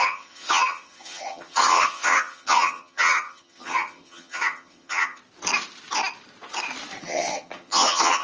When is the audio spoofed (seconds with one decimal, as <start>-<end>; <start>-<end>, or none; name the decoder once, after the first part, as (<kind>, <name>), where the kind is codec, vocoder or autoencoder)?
0.0-5.2 (vocoder, HiFi-GAN); 7.0-8.2